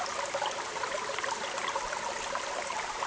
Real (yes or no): yes